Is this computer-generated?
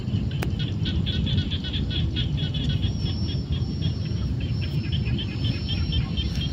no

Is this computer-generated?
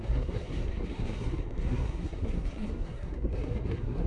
yes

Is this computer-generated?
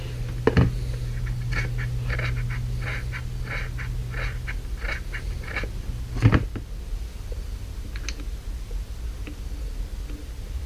no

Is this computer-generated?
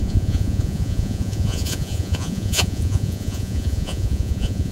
yes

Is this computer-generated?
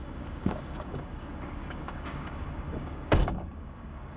yes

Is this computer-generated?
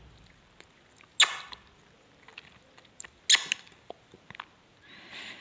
no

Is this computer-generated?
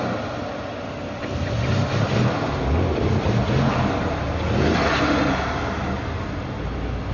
no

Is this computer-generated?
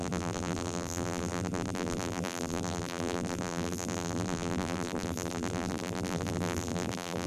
yes